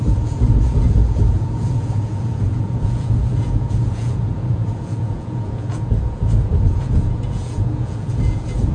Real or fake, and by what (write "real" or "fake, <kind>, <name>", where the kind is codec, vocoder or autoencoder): fake, vocoder, Vocos